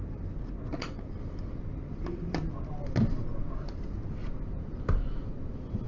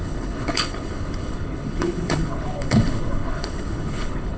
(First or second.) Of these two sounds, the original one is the first